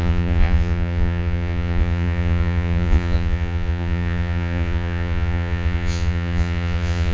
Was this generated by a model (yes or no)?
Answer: yes